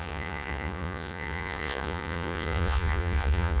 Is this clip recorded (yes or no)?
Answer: no